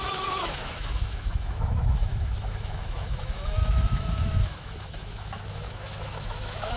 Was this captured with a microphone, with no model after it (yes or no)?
no